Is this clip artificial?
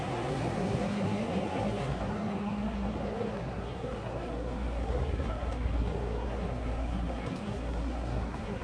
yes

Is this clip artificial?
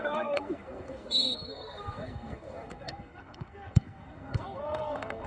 yes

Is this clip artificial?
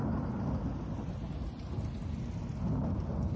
no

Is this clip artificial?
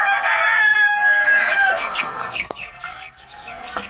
yes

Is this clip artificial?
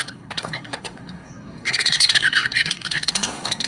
yes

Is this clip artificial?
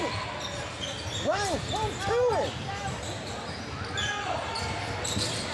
no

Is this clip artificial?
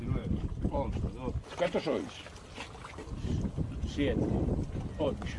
no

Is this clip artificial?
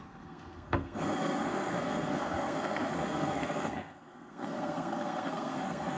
yes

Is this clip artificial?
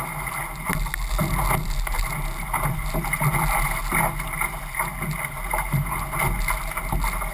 no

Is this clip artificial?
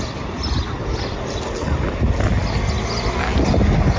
no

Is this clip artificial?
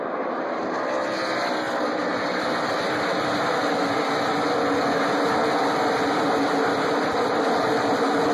no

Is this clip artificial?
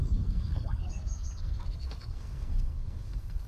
yes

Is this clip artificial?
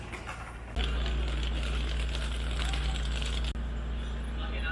no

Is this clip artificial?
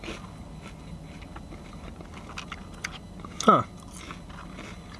no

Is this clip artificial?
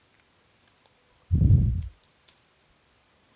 no